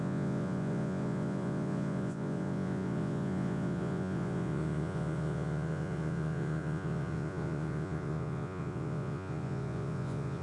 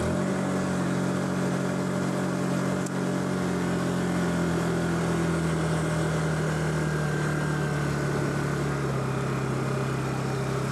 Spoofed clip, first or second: first